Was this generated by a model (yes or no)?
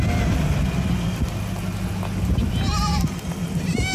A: no